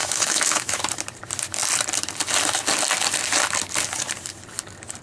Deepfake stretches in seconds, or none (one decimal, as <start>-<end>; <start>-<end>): 0.0-0.8